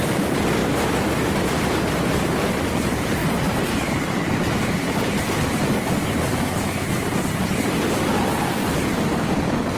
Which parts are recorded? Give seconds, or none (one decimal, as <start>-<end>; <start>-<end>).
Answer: 0.0-0.6; 2.4-3.2; 4.3-9.8